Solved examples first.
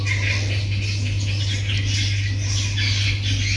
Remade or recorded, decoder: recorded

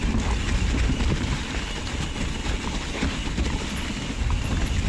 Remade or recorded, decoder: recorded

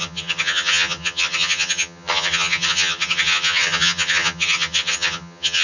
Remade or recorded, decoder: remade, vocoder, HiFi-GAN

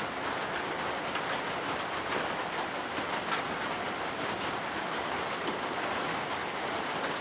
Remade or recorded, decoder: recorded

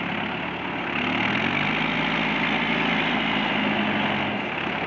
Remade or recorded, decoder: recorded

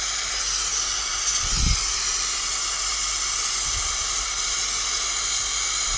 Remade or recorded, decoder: recorded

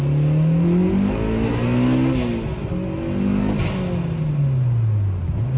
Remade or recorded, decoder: recorded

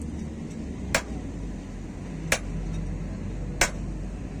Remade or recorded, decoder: recorded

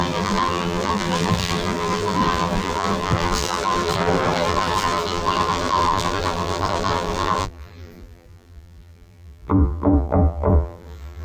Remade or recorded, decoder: remade, vocoder, BigVGAN v2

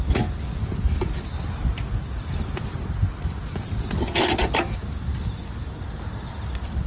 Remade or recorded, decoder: recorded